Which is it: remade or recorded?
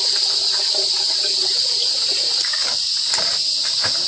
recorded